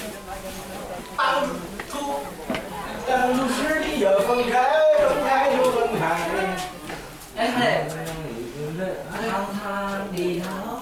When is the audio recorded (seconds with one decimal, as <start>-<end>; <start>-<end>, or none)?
0.0-3.2; 5.7-9.0; 10.4-10.8